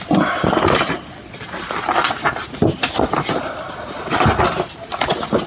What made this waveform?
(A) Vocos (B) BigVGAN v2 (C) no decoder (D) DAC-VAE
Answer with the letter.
C